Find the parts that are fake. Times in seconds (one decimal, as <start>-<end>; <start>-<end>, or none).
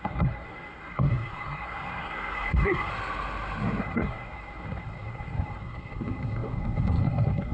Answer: 0.0-2.9; 3.8-7.5